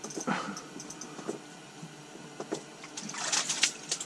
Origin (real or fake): real